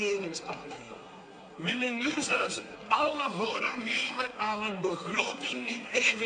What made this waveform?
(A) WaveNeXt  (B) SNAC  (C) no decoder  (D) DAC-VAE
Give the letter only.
B